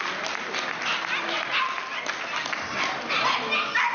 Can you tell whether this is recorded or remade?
recorded